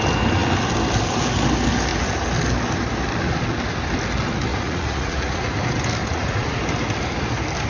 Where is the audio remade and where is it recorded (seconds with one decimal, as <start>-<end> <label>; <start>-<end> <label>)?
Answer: 0.0-4.5 recorded; 4.5-5.5 remade; 5.5-6.0 recorded; 6.0-6.6 remade; 6.6-7.7 recorded